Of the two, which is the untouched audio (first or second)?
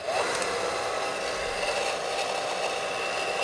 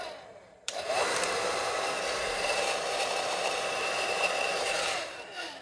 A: first